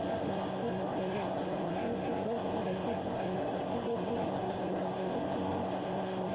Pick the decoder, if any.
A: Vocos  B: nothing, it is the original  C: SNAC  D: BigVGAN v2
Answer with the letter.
C